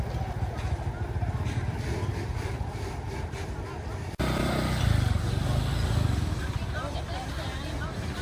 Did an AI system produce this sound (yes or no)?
no